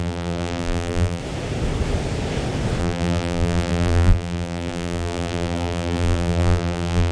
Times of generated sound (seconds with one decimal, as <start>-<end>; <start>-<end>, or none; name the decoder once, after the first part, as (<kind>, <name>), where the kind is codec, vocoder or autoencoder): 0.0-1.2 (vocoder, BigVGAN v2); 2.8-7.1